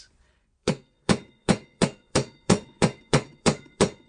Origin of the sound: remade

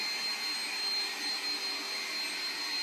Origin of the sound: recorded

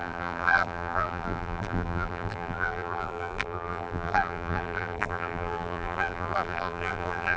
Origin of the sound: remade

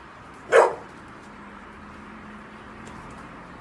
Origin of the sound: remade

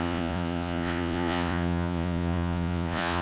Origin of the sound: remade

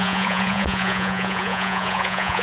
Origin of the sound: remade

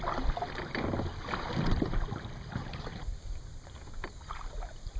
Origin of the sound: recorded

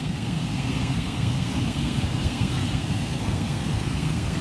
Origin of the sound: remade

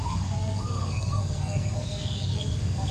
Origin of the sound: remade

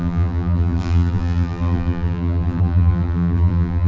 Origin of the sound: remade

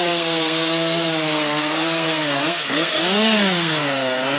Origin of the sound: remade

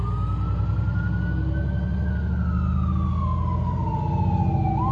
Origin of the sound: recorded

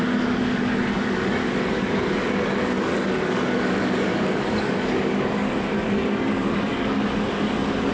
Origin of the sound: remade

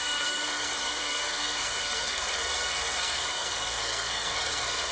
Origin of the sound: remade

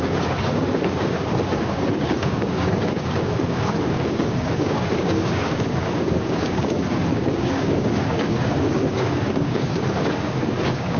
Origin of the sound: remade